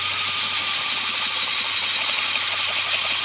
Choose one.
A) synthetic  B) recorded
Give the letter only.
B